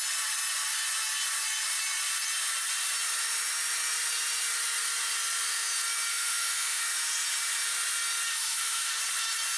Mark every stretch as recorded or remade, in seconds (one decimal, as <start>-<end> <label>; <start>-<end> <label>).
0.0-6.1 recorded; 6.1-6.8 remade; 6.8-8.3 recorded; 8.3-9.0 remade; 9.0-9.6 recorded